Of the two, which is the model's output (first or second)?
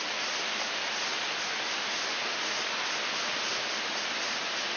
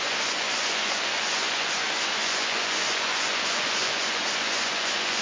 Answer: second